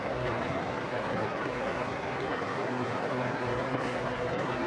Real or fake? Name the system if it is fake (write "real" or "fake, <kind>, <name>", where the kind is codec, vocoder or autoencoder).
fake, codec, SNAC